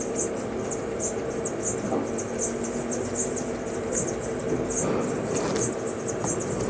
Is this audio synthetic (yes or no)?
no